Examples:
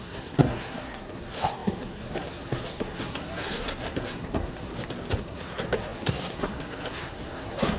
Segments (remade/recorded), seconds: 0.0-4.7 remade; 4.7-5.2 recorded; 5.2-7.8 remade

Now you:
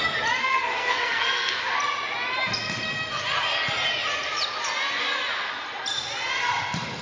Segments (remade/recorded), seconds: 0.0-0.4 recorded; 0.4-1.6 remade; 1.6-7.0 recorded

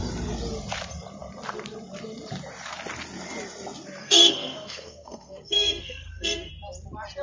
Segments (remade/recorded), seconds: 0.0-4.0 recorded; 4.0-6.5 remade; 6.5-7.2 recorded

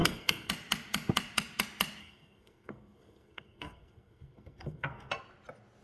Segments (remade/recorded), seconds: 0.0-0.5 remade; 0.5-2.0 recorded; 2.0-5.1 remade; 5.1-5.8 recorded

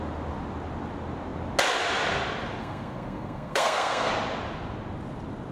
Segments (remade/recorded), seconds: 0.0-2.6 recorded; 2.6-4.1 remade; 4.1-5.5 recorded

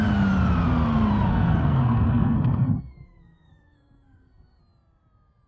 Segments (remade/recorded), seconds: 0.0-1.3 recorded; 1.3-4.6 remade; 4.6-5.5 recorded

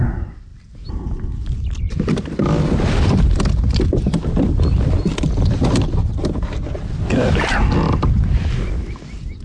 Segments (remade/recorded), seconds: 0.0-9.4 recorded